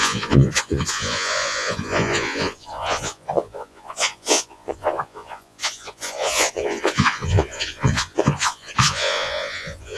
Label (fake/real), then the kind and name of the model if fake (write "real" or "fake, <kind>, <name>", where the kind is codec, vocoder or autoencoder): fake, vocoder, Vocos